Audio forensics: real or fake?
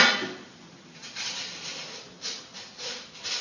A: real